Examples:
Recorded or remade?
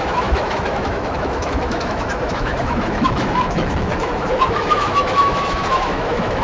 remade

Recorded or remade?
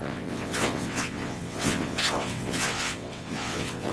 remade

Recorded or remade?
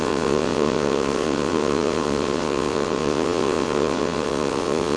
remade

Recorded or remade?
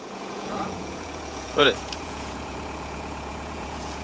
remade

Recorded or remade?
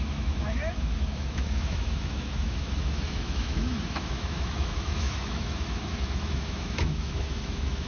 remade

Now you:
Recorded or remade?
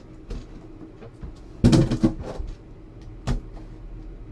recorded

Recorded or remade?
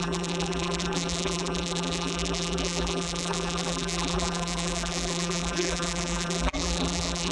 remade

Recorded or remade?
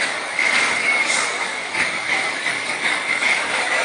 remade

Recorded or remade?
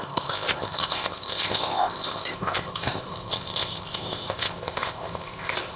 remade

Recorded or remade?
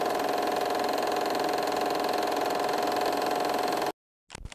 recorded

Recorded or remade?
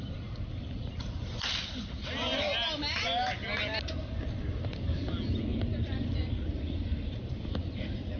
recorded